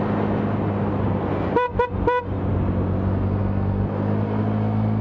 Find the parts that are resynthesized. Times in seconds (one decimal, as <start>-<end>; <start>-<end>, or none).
none